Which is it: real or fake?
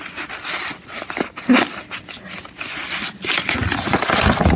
real